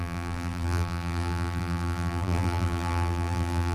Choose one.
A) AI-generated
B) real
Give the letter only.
A